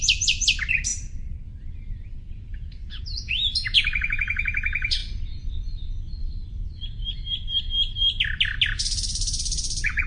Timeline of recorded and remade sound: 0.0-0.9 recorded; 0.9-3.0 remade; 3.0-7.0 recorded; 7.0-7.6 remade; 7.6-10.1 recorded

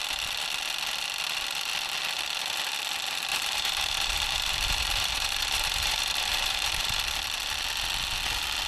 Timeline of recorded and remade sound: 0.0-3.3 recorded; 3.3-7.0 remade; 7.0-8.7 recorded

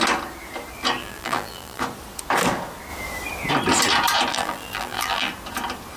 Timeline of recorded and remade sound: 0.0-1.0 recorded; 1.0-1.8 remade; 1.8-4.3 recorded; 4.3-5.3 remade; 5.3-6.0 recorded

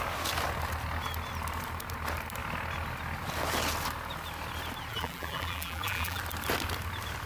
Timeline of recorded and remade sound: 0.0-4.9 recorded; 4.9-6.2 remade; 6.2-7.3 recorded

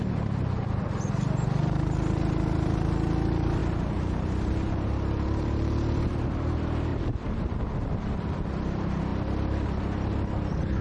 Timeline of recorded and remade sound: 0.0-3.6 recorded; 3.6-6.2 remade; 6.2-6.9 recorded; 6.9-7.6 remade; 7.6-10.8 recorded

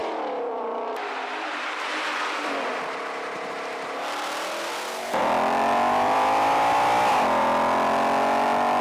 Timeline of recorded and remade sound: 0.0-8.8 remade